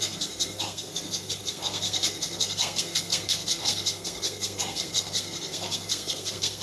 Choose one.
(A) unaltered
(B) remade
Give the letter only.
B